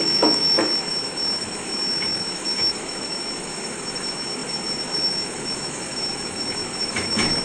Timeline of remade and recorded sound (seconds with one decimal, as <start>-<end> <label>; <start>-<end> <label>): 0.0-7.4 remade